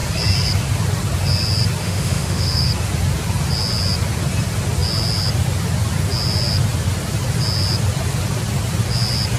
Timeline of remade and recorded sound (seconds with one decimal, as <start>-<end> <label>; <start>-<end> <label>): 0.0-1.8 recorded; 1.8-2.7 remade; 2.7-9.4 recorded